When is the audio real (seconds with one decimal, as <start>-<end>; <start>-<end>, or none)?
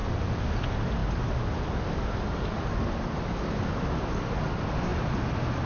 0.0-4.9